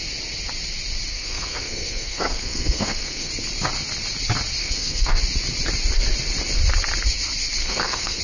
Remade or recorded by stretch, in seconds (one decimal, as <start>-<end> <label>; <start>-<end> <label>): 0.0-1.1 recorded; 1.1-3.3 remade; 3.3-4.6 recorded; 4.6-5.2 remade; 5.2-7.6 recorded; 7.6-8.2 remade